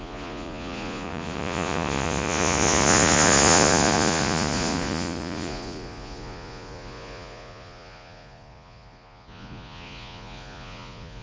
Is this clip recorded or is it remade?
remade